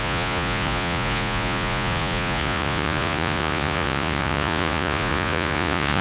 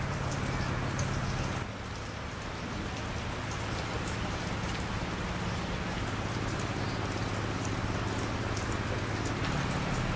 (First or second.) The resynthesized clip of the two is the first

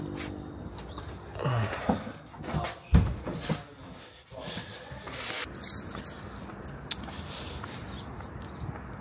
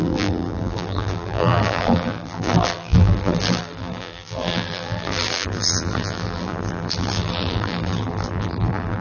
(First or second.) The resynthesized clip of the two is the second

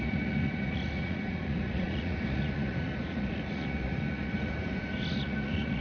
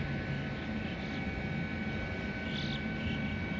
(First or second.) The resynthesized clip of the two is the first